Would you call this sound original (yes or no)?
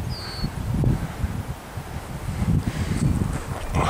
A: yes